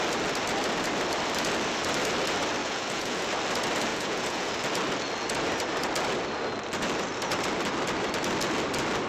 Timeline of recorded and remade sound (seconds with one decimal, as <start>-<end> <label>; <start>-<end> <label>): 0.0-2.6 recorded; 2.6-3.3 remade; 3.3-3.9 recorded; 3.9-4.5 remade; 4.5-9.1 recorded